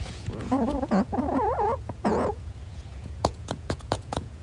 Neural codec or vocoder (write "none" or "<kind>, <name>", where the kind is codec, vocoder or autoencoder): vocoder, Vocos